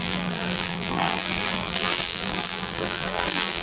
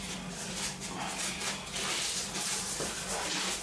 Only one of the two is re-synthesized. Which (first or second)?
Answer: first